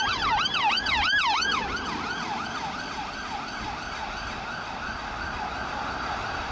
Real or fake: real